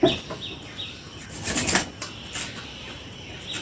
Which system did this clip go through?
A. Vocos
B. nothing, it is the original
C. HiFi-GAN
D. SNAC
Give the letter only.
B